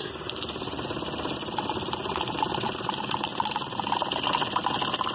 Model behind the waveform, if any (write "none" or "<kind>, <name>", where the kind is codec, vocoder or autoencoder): none